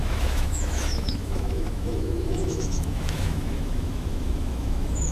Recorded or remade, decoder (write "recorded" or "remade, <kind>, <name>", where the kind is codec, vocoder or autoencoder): remade, autoencoder, DAC-VAE